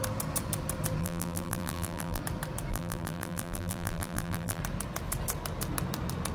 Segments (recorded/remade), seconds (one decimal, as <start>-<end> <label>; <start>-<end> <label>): 0.0-1.0 recorded; 1.0-2.2 remade; 2.2-2.7 recorded; 2.7-4.6 remade; 4.6-6.3 recorded